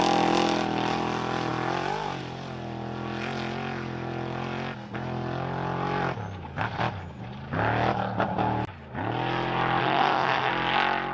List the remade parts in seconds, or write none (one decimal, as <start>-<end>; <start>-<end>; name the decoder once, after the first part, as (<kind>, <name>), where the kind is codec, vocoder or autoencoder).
9.8-10.5 (autoencoder, DAC-VAE)